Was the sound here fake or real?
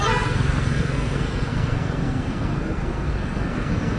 fake